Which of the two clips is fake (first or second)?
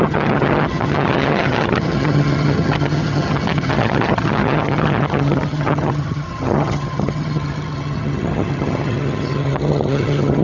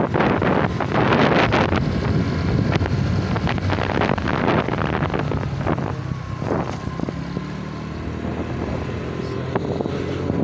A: first